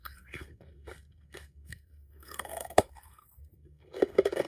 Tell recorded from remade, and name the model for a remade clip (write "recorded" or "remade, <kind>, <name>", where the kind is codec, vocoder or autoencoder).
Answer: remade, codec, SNAC